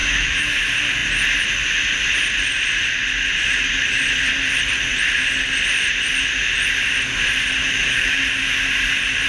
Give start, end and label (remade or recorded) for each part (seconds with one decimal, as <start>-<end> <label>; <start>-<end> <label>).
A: 0.0-0.6 remade; 0.6-7.6 recorded; 7.6-8.2 remade; 8.2-9.3 recorded